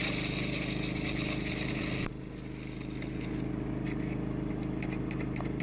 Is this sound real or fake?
real